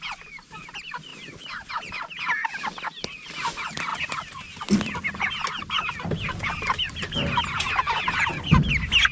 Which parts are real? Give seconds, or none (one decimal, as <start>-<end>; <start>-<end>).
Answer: 0.0-9.1